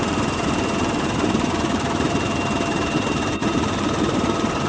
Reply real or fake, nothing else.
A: fake